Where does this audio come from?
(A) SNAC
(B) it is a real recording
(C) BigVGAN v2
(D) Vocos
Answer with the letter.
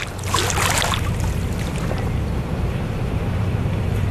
C